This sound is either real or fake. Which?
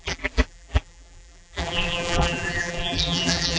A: fake